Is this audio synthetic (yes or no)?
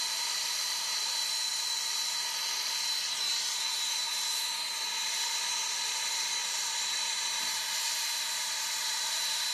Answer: no